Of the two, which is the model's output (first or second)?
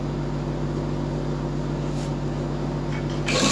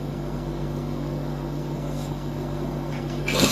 second